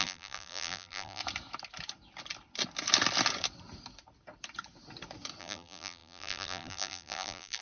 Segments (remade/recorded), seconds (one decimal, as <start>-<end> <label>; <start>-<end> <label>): 0.0-1.2 remade; 1.2-5.4 recorded; 5.4-7.6 remade